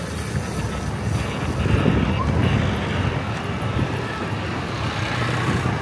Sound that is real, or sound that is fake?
real